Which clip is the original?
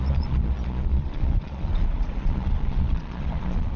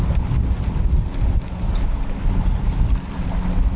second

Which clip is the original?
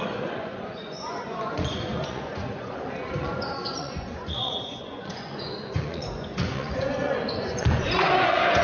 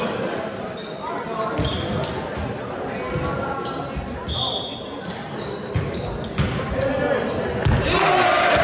second